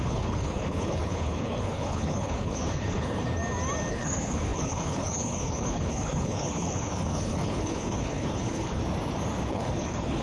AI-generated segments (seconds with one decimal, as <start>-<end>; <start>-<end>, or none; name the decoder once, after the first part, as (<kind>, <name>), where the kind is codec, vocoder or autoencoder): 0.0-3.2 (codec, HILCodec); 3.9-8.8; 9.5-10.2